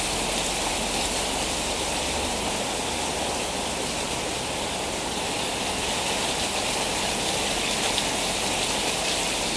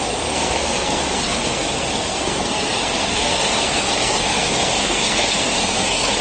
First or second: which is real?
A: first